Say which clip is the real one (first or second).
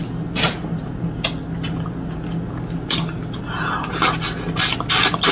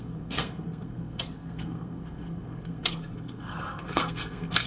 first